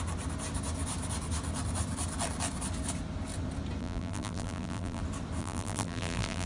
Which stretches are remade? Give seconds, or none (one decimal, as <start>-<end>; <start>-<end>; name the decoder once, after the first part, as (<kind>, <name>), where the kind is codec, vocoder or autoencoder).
3.8-5.0 (vocoder, BigVGAN v2); 5.4-6.5